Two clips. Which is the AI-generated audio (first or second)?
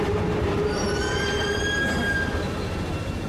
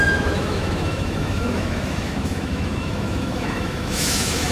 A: second